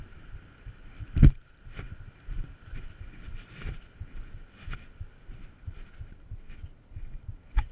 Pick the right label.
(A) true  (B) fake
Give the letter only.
A